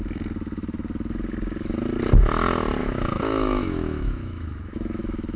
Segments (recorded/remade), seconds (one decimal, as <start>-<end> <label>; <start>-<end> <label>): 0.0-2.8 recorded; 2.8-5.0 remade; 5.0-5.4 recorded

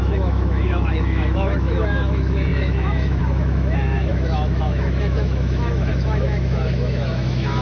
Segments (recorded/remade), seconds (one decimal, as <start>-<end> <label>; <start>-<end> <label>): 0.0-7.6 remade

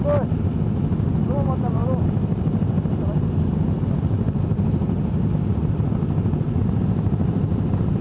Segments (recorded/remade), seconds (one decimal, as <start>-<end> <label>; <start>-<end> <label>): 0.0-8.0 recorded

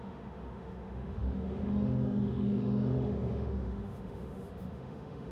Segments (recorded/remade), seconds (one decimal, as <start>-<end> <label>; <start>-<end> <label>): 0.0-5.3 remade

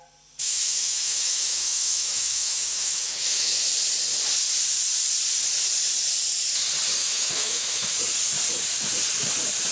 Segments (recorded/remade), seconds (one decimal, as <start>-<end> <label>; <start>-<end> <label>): 0.0-0.4 recorded; 0.4-3.6 remade; 3.6-7.0 recorded; 7.0-7.9 remade; 7.9-9.7 recorded

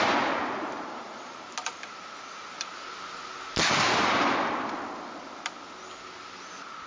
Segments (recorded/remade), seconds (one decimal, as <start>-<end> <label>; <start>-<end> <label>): 0.0-6.9 recorded